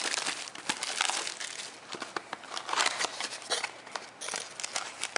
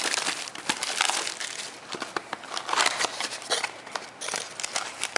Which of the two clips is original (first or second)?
first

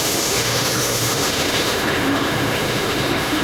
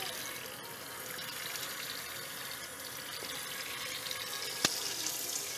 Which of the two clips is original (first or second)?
second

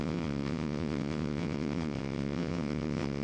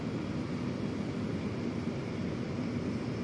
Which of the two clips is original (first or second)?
second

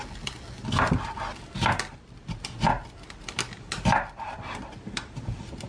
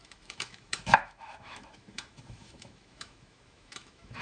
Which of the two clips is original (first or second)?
first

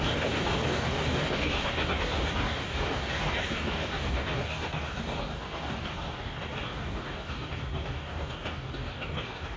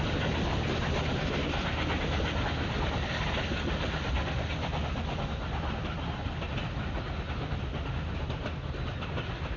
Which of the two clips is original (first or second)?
second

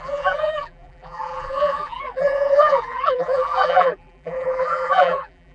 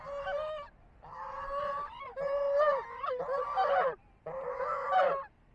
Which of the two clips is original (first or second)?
second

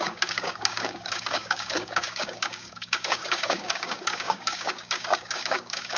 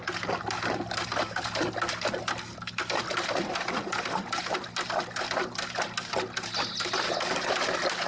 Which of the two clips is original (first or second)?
second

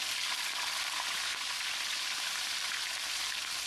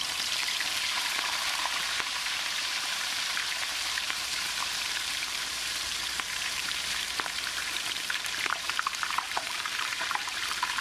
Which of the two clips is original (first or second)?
first